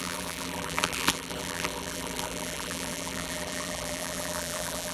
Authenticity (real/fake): fake